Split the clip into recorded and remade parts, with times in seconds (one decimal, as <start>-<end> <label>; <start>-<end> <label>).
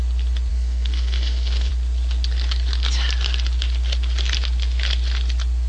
0.0-0.5 recorded; 0.5-1.7 remade; 1.7-5.7 recorded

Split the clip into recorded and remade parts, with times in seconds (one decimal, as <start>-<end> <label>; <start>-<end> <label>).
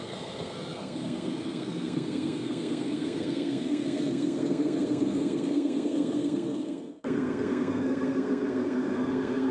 0.0-9.5 remade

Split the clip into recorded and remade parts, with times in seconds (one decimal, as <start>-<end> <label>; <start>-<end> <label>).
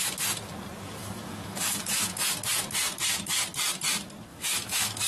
0.0-1.0 recorded; 1.0-2.3 remade; 2.3-4.3 recorded; 4.3-5.1 remade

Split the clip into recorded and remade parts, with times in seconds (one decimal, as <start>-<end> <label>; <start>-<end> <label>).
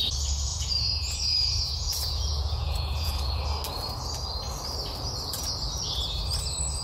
0.0-0.5 recorded; 0.5-3.4 remade; 3.4-6.8 recorded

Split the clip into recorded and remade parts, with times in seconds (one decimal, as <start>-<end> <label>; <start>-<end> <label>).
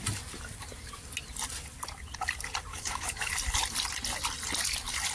0.0-2.7 recorded; 2.7-3.3 remade; 3.3-5.1 recorded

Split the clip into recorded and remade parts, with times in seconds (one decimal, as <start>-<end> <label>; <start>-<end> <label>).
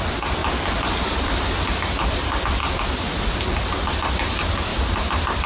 0.0-0.4 remade; 0.4-1.0 recorded; 1.0-2.6 remade; 2.6-3.2 recorded; 3.2-5.5 remade